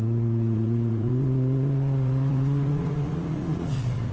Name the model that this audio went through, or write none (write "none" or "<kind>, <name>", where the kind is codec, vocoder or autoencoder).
vocoder, Vocos